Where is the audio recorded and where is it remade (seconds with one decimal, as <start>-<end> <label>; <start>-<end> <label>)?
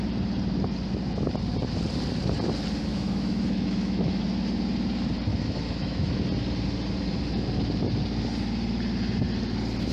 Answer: 0.0-2.9 recorded; 2.9-4.2 remade; 4.2-5.3 recorded; 5.3-6.1 remade; 6.1-9.9 recorded